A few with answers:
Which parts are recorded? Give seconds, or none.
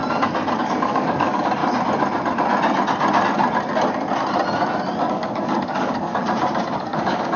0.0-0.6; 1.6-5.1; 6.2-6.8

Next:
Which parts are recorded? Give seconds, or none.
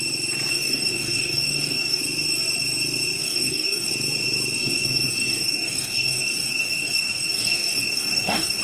0.0-0.5; 2.0-3.2; 3.9-4.6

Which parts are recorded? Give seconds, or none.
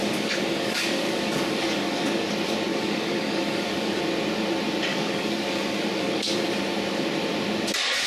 2.3-2.7; 4.0-4.9; 6.6-8.1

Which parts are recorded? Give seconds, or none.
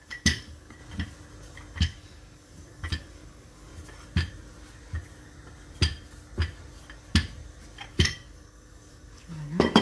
0.8-1.8; 3.7-7.9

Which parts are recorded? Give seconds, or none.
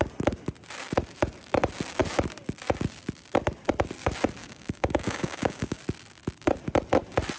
0.0-4.4; 5.8-7.4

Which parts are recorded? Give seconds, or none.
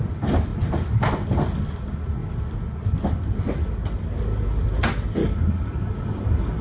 0.0-5.2